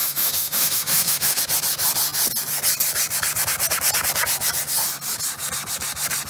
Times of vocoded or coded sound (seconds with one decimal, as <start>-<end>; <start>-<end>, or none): 0.0-1.4